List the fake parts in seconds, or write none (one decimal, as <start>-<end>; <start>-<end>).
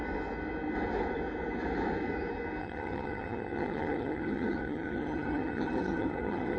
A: 2.6-6.6